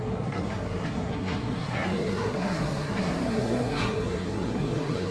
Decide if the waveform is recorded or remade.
remade